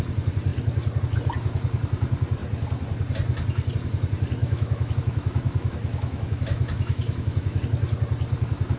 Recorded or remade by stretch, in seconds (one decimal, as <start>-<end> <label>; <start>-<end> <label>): 0.0-4.4 recorded; 4.4-7.6 remade; 7.6-8.8 recorded